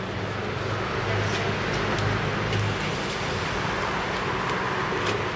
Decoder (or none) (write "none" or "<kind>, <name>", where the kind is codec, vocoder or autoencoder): none